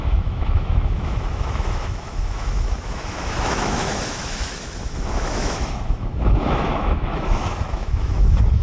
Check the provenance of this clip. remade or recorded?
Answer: remade